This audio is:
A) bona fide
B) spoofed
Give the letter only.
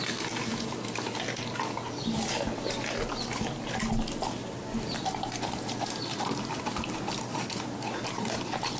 A